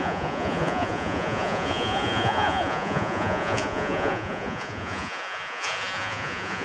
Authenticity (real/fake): fake